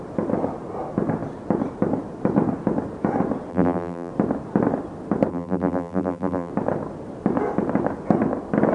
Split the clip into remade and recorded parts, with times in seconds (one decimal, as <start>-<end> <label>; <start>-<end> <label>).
0.0-3.5 recorded; 3.5-4.1 remade; 4.1-5.3 recorded; 5.3-6.5 remade; 6.5-8.7 recorded